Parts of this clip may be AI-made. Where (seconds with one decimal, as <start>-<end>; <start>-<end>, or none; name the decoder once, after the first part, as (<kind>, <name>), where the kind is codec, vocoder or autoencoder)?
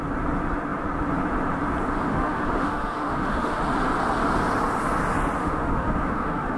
2.1-3.6 (autoencoder, DAC-VAE); 5.4-6.6